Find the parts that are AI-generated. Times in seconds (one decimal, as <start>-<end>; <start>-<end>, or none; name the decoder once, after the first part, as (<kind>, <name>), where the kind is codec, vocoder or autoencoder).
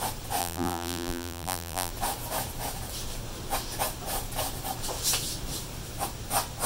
0.4-1.9 (vocoder, BigVGAN v2)